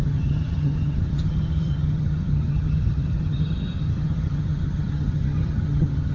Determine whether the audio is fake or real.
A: fake